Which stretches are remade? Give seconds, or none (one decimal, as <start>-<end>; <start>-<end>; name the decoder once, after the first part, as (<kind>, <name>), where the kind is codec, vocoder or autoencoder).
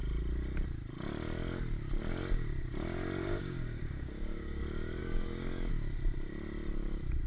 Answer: 3.2-4.6 (codec, DAC); 5.0-5.7